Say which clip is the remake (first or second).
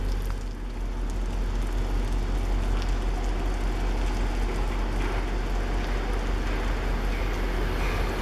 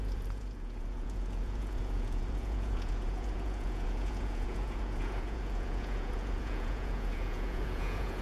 second